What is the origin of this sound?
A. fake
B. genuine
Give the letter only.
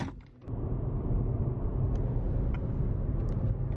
B